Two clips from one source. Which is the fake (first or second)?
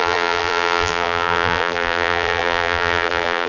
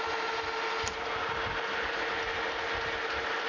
first